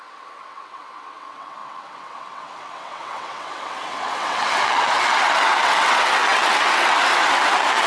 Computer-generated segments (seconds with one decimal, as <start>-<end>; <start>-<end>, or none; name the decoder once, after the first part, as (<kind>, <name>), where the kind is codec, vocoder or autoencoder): 0.0-7.9 (vocoder, WaveNeXt)